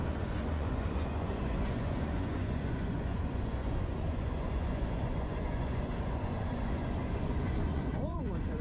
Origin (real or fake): fake